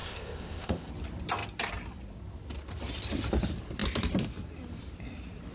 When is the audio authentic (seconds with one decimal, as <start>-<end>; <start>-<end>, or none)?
0.9-5.5